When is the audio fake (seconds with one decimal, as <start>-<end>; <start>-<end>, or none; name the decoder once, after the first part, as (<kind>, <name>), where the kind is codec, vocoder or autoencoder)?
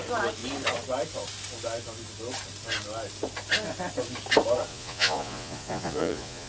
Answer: 4.7-6.5 (vocoder, Vocos)